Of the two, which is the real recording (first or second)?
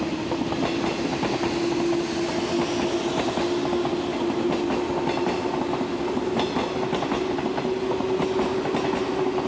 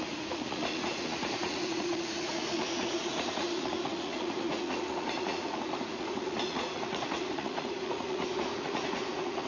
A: first